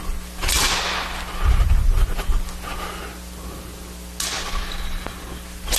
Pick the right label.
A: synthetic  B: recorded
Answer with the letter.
B